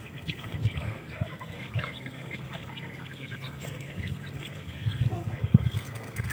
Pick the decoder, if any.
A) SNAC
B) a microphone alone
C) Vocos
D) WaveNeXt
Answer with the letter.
A